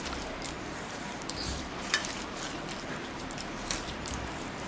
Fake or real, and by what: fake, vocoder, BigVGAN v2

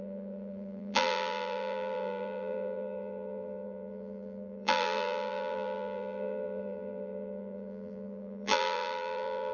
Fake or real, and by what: fake, vocoder, BigVGAN v2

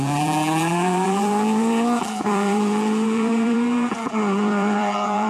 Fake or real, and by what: fake, vocoder, BigVGAN v2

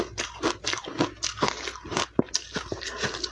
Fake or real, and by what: real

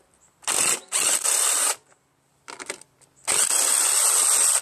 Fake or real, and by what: real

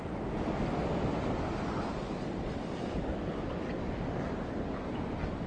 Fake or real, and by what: real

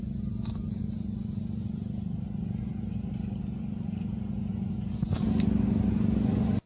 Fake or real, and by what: real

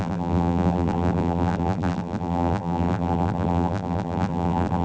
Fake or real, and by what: fake, vocoder, BigVGAN v2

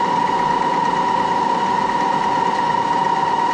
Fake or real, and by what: real